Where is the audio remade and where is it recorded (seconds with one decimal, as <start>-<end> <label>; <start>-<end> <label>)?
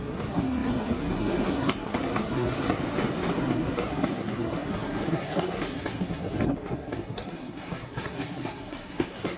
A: 0.0-2.8 remade; 2.8-3.3 recorded; 3.3-9.4 remade